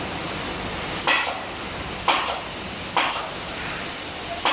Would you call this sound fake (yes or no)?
no